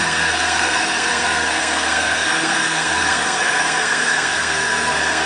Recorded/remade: remade